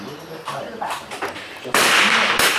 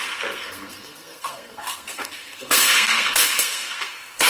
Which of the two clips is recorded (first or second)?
first